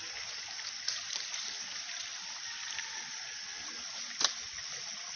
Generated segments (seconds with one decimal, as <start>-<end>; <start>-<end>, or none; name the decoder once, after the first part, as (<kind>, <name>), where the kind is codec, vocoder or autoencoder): none